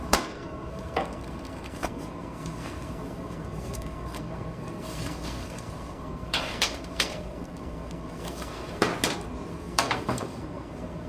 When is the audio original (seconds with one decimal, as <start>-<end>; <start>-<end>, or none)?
8.9-9.5